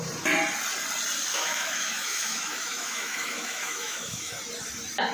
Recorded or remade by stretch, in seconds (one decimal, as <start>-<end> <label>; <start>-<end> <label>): 0.0-1.3 recorded; 1.3-4.4 remade; 4.4-5.1 recorded